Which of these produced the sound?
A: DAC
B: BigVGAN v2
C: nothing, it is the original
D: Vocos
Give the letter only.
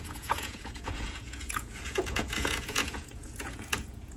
D